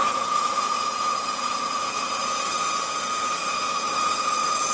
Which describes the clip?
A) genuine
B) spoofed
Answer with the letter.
B